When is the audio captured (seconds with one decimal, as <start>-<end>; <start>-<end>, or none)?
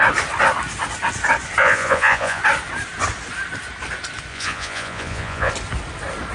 0.0-1.6; 2.4-4.3; 5.5-6.3